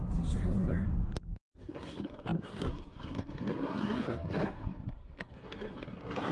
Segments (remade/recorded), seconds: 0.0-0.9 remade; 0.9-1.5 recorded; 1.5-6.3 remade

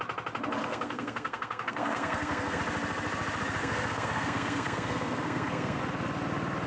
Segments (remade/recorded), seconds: 0.0-0.6 recorded; 0.6-2.6 remade; 2.6-3.6 recorded; 3.6-5.8 remade; 5.8-6.7 recorded

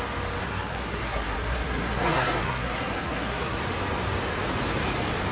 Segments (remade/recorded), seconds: 0.0-0.4 recorded; 0.4-3.6 remade; 3.6-5.3 recorded